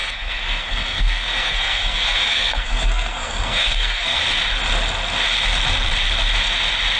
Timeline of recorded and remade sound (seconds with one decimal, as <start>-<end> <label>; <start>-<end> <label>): 0.0-4.2 remade; 4.2-7.0 recorded